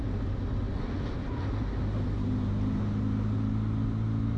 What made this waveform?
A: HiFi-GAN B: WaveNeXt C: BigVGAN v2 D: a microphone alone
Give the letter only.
D